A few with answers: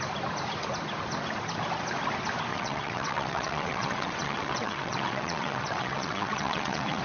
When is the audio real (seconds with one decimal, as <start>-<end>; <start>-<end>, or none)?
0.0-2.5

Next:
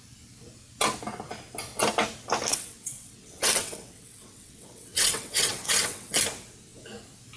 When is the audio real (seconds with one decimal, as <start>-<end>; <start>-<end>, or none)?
0.0-2.5; 6.2-7.4

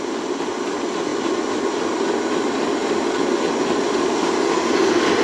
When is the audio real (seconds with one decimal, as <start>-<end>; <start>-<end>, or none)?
0.0-5.2

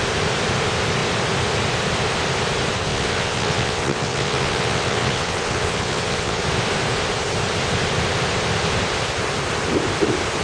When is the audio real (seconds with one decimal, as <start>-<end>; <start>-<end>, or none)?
0.0-2.9; 6.4-10.4

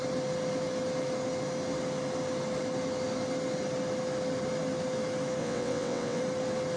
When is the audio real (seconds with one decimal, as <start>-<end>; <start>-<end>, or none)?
0.0-5.4; 6.2-6.8

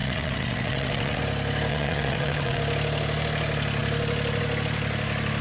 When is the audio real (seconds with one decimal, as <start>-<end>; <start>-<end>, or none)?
1.2-1.7; 2.6-5.4

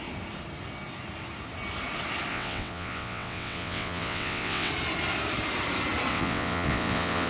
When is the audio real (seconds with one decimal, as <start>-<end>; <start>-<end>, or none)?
0.0-2.3; 4.7-6.1